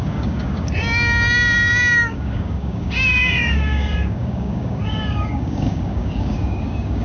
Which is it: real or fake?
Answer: fake